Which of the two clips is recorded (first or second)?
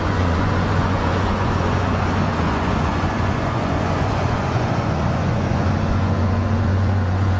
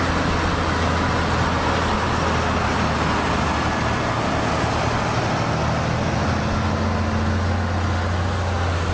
second